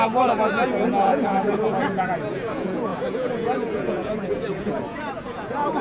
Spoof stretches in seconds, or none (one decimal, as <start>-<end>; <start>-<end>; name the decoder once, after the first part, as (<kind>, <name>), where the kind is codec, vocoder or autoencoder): 0.0-5.8 (vocoder, Vocos)